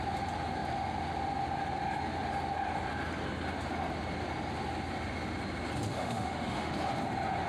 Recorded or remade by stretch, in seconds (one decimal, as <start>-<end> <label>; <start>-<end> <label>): 0.0-5.9 recorded; 5.9-6.7 remade; 6.7-7.5 recorded